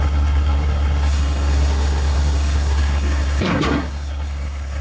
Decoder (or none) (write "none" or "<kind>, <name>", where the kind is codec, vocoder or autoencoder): codec, SNAC